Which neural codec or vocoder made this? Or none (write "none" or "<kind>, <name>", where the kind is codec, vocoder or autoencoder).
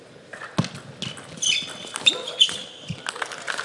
none